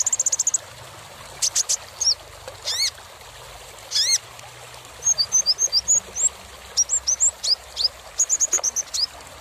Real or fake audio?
real